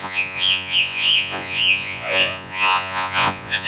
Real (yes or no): no